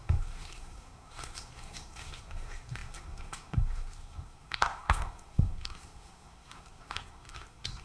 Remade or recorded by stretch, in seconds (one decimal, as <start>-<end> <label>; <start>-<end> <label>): 0.0-7.8 remade